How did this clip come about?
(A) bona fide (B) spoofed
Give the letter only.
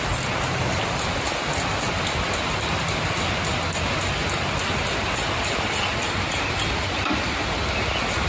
A